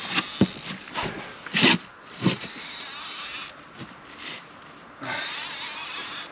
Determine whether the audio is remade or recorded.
recorded